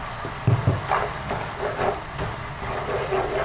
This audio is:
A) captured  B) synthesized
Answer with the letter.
A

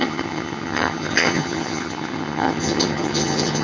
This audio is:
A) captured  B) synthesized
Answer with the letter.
B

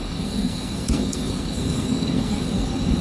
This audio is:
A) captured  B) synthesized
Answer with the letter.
B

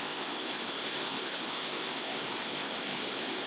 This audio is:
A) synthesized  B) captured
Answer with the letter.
A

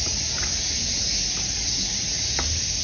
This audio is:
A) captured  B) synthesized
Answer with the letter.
A